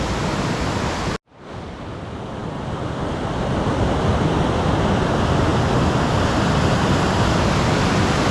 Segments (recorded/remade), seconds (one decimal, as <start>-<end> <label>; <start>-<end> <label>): 0.0-8.3 recorded